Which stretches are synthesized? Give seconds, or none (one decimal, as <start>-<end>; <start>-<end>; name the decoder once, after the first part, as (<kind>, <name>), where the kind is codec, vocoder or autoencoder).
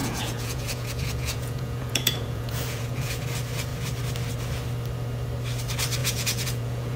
0.0-3.2 (vocoder, Vocos); 6.0-7.0